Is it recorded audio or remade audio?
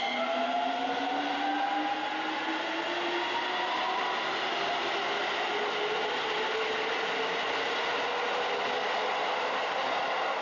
recorded